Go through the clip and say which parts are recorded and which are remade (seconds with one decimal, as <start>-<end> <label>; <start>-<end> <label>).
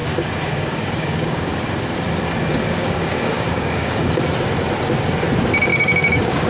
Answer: 0.0-1.6 remade; 1.6-2.8 recorded; 2.8-4.2 remade; 4.2-5.7 recorded; 5.7-6.5 remade